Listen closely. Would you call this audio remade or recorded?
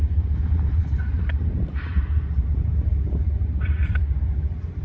remade